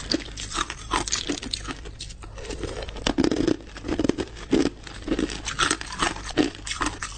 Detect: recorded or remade recorded